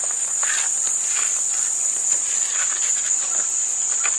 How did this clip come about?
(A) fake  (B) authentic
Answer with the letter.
B